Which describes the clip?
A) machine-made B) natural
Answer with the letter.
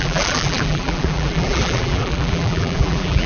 A